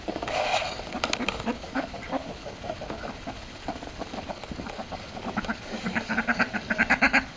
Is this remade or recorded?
remade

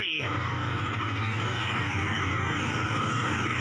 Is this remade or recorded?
remade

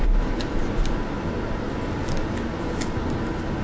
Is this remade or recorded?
recorded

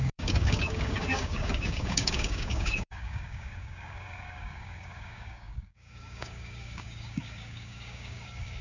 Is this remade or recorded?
remade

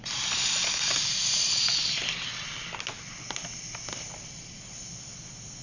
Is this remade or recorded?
recorded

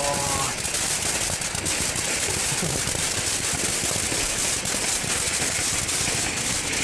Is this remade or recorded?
recorded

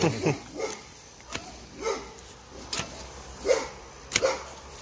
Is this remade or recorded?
recorded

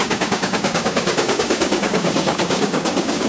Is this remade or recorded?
remade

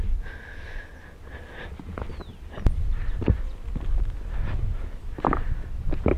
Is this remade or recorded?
recorded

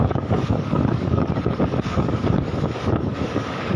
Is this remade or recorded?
remade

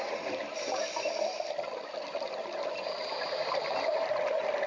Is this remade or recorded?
recorded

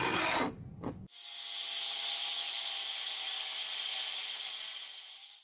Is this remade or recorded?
recorded